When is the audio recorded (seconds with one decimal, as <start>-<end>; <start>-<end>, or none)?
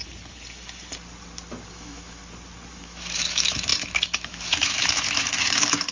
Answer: 0.0-1.7; 2.2-2.7